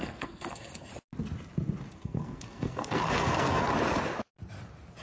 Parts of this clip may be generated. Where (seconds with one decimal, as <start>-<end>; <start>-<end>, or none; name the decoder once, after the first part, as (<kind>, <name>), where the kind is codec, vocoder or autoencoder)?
0.0-0.9 (codec, SNAC); 1.9-3.7